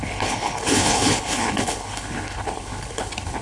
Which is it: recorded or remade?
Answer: remade